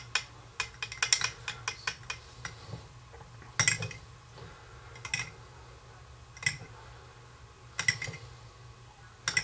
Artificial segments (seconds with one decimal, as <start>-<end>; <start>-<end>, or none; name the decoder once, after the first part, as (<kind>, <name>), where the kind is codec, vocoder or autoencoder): none

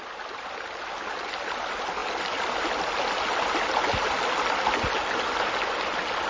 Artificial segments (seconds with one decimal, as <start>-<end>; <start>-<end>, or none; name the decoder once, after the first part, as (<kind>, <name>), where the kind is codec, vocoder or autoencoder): none

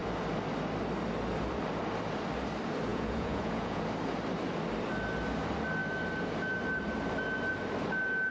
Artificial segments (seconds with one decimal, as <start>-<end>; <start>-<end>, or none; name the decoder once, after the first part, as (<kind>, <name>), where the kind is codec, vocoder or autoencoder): 2.9-3.8 (vocoder, Vocos)

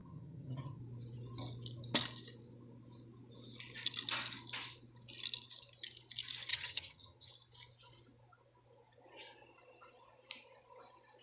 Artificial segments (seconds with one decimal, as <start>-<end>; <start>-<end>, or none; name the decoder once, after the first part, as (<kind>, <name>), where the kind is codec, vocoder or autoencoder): 0.0-0.8 (vocoder, HiFi-GAN); 6.5-7.3

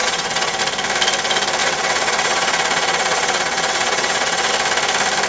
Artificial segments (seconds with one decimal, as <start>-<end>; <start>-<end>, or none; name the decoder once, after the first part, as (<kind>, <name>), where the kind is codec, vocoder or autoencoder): 0.0-0.6 (vocoder, WaveNeXt); 1.6-4.5

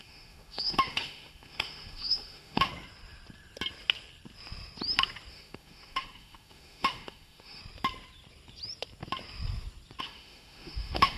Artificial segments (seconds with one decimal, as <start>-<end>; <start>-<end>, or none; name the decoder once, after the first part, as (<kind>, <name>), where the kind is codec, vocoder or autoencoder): 0.0-2.7 (autoencoder, DAC-VAE); 5.3-7.6; 10.0-11.2

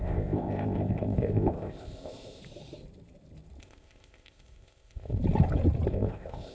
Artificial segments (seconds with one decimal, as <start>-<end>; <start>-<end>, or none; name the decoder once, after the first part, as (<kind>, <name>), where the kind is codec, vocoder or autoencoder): 0.0-2.4 (codec, ZipCodec); 3.6-5.2; 5.9-6.5

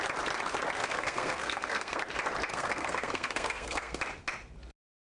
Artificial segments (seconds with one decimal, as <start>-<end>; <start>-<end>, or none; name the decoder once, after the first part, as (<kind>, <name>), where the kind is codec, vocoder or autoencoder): 0.8-2.0 (codec, SNAC); 2.5-4.0